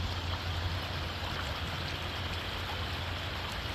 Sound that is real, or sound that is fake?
real